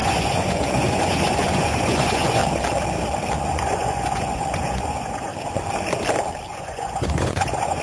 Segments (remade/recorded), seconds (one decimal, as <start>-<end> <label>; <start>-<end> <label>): 0.0-2.4 remade; 2.4-3.4 recorded; 3.4-5.3 remade; 5.3-6.5 recorded; 6.5-7.8 remade